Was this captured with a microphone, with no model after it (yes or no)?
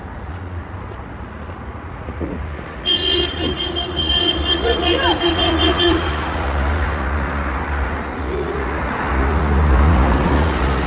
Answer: no